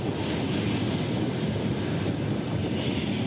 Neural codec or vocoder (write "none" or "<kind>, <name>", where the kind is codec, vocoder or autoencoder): none